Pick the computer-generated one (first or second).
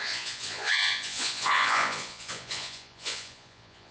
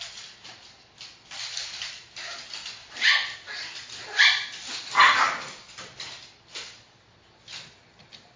first